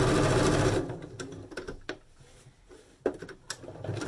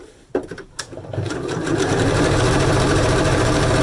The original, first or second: first